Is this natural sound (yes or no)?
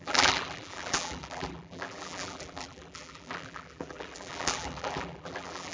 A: no